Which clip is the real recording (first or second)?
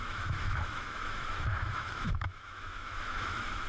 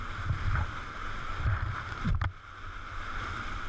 second